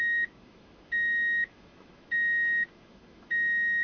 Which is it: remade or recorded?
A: remade